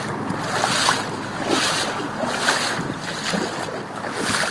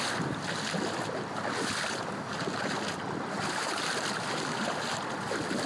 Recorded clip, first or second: first